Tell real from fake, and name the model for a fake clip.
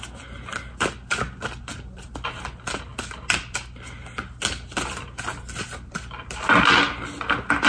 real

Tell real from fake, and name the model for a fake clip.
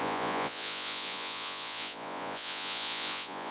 fake, vocoder, Vocos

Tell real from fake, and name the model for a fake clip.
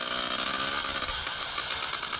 real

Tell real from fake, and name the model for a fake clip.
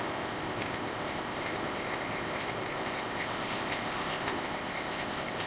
fake, codec, ZipCodec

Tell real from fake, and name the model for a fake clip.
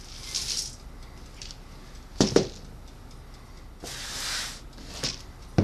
real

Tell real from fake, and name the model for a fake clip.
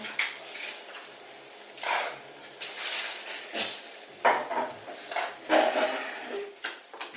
real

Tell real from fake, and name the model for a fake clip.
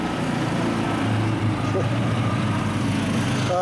real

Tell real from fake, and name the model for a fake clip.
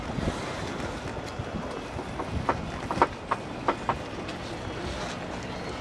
real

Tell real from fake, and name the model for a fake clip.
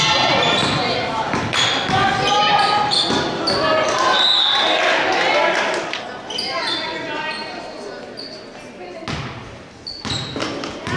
real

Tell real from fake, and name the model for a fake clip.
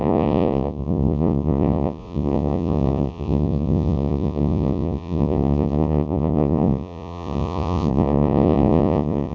fake, vocoder, Vocos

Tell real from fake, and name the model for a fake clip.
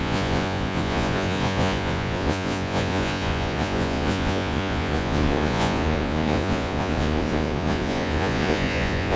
fake, vocoder, Vocos